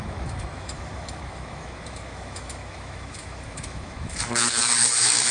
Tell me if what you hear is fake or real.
fake